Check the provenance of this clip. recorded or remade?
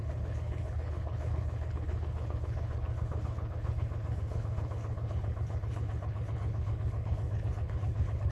remade